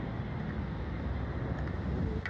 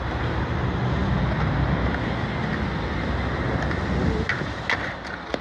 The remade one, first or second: first